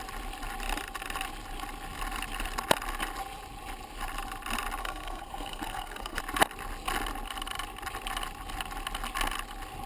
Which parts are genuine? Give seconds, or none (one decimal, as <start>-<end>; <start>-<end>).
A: 0.0-4.8; 6.2-9.9